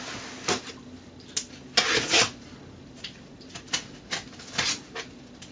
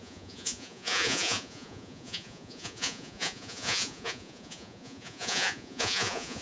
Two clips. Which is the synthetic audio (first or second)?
second